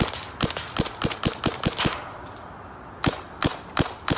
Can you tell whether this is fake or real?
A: real